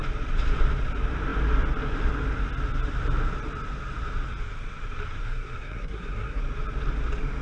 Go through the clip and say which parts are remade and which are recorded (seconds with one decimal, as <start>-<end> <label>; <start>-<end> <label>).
0.0-5.2 recorded; 5.2-6.4 remade; 6.4-7.4 recorded